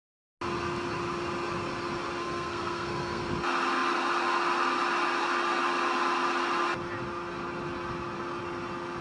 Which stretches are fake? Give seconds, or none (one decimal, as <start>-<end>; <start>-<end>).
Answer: 2.2-3.2